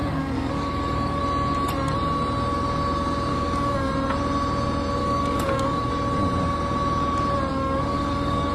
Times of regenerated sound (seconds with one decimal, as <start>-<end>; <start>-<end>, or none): 0.0-1.2; 3.3-3.9; 5.0-5.9; 7.5-8.5